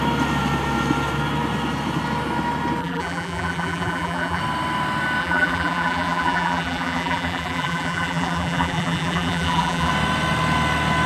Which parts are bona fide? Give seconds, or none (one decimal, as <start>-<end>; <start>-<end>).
0.0-2.8; 4.4-5.2; 9.9-11.1